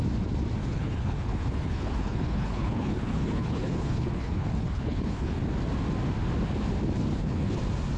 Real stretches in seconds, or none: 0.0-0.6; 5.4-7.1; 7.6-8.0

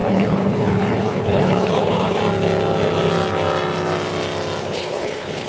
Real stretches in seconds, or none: 2.2-4.6